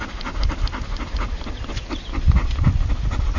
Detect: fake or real real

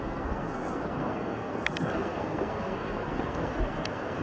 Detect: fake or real fake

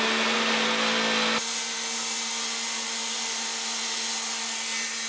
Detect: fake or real real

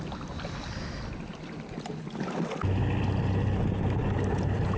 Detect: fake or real real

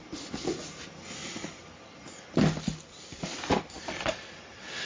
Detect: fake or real real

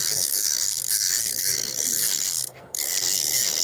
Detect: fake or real fake